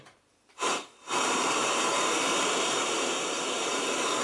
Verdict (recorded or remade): remade